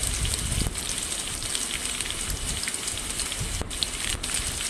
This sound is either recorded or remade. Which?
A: recorded